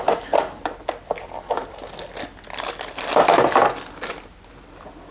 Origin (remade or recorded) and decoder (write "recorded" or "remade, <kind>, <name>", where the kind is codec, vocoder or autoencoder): recorded